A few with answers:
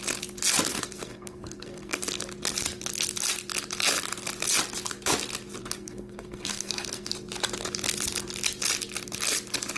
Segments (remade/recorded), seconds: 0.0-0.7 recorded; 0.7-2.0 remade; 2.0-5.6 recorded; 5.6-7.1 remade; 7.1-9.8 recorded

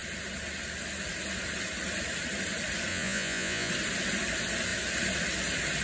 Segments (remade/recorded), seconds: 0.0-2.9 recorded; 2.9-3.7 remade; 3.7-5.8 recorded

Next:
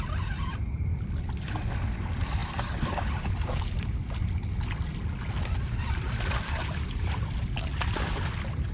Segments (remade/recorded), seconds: 0.0-8.7 recorded